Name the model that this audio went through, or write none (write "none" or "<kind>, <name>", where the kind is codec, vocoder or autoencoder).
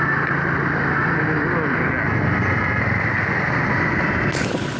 none